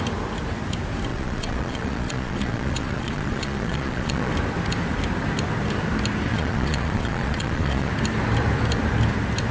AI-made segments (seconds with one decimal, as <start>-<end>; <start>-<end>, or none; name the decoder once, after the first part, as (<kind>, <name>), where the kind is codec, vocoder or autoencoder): 1.1-4.3 (vocoder, Vocos); 6.3-7.9